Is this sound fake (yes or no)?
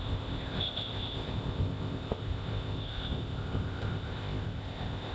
yes